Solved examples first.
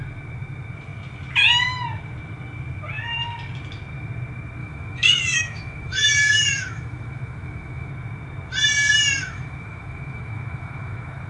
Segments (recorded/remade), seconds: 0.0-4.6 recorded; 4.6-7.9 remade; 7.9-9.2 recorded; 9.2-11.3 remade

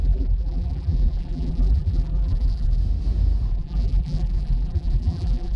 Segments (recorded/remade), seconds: 0.0-2.8 remade; 2.8-3.5 recorded; 3.5-5.6 remade

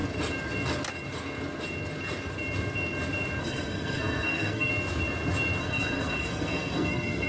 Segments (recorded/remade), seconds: 0.0-3.4 recorded; 3.4-4.7 remade; 4.7-5.6 recorded; 5.6-7.3 remade

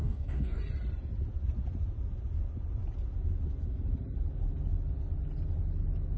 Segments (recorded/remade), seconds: 0.0-0.6 remade; 0.6-6.2 recorded

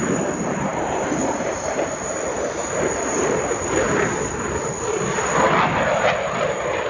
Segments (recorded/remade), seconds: 0.0-6.9 recorded

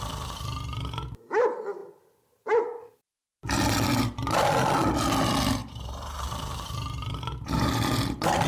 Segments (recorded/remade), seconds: 0.0-5.6 recorded; 5.6-7.7 remade; 7.7-8.5 recorded

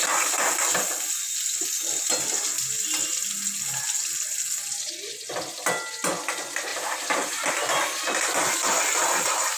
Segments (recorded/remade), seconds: 0.0-6.7 recorded; 6.7-7.5 remade; 7.5-9.6 recorded